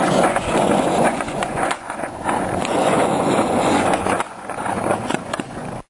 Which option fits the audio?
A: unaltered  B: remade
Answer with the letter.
B